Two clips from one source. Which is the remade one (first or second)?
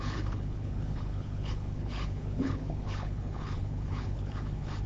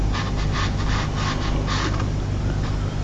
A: first